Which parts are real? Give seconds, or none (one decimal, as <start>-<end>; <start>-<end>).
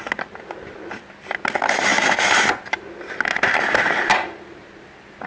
0.0-5.3